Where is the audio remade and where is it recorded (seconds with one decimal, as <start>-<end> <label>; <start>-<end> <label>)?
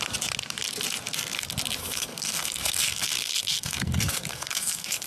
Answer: 0.0-1.8 recorded; 1.8-5.1 remade